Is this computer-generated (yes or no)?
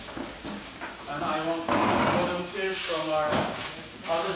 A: yes